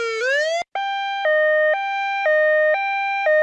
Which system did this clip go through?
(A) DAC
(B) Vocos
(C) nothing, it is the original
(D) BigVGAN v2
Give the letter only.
C